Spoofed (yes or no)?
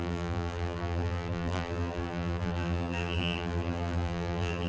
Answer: yes